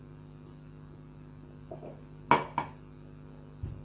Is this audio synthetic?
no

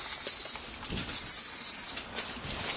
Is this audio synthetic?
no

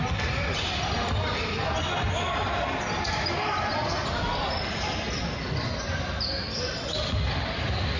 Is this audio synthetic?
no